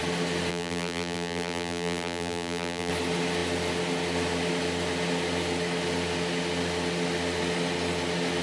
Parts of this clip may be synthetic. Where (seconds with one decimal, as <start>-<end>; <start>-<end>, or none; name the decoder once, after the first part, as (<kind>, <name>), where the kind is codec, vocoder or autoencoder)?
0.5-2.9 (vocoder, BigVGAN v2)